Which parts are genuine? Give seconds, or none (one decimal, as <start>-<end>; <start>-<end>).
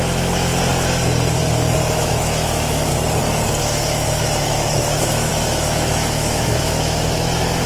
0.5-1.9; 2.9-3.6